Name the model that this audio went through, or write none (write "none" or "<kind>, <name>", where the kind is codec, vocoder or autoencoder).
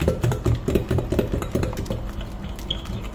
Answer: vocoder, BigVGAN v2